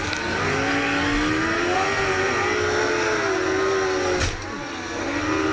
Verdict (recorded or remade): recorded